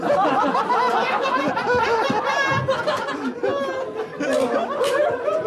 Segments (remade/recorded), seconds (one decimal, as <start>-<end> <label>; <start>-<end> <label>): 0.0-5.5 recorded